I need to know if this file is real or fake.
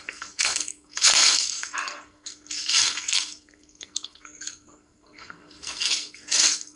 fake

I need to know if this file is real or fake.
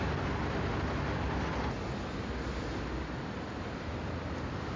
real